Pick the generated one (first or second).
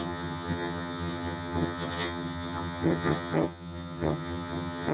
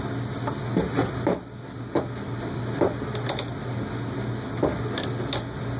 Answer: first